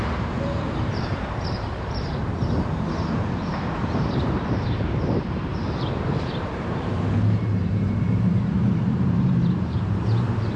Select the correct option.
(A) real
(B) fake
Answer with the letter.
B